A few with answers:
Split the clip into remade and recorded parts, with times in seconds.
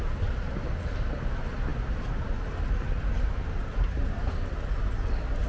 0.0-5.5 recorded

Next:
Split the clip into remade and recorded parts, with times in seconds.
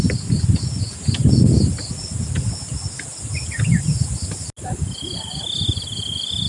0.0-6.5 recorded